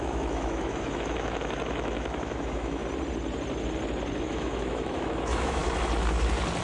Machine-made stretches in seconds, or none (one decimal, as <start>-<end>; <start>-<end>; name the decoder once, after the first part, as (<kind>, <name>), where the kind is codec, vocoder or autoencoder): 0.0-2.8 (autoencoder, DAC-VAE); 4.2-5.6